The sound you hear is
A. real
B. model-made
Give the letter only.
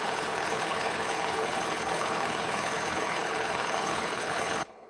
B